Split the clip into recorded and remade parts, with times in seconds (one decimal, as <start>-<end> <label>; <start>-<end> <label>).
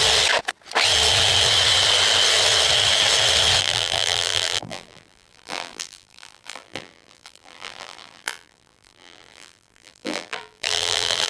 0.0-3.6 recorded; 3.6-11.3 remade